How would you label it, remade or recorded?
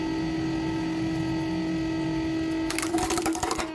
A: recorded